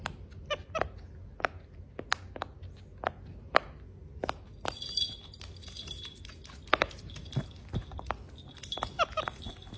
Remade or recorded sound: recorded